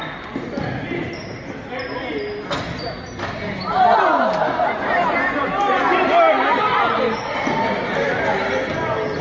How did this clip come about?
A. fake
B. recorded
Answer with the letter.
B